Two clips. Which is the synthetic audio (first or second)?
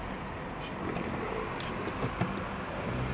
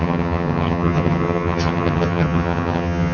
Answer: second